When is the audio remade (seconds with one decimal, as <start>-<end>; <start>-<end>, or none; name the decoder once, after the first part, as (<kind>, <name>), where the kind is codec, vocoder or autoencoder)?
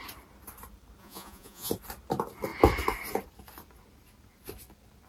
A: 1.0-1.7 (vocoder, Vocos)